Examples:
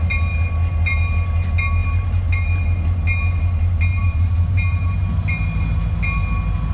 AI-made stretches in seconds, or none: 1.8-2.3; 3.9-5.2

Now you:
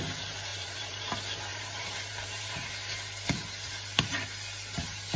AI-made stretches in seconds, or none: 0.5-1.1; 1.5-2.7

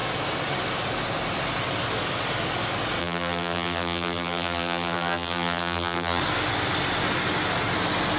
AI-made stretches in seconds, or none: 3.0-6.2

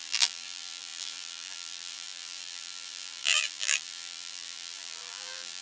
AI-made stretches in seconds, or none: 0.0-5.6

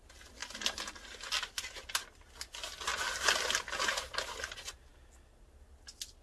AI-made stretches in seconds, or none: none

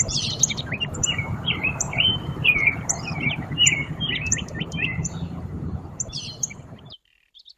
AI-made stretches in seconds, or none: 0.0-7.6